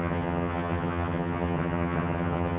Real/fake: fake